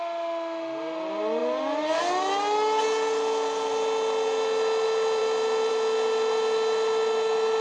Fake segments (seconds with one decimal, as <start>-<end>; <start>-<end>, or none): 1.4-2.0